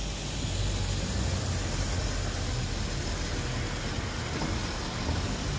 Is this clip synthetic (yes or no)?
no